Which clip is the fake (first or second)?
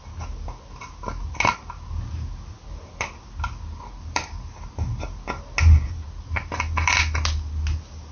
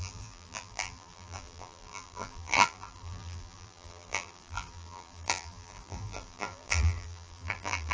second